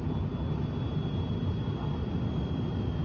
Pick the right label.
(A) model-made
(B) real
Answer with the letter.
B